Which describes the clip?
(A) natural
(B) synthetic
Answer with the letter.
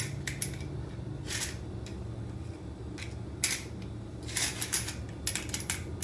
A